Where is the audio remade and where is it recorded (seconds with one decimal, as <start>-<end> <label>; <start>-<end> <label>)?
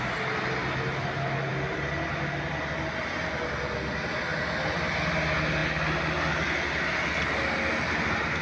0.0-8.4 recorded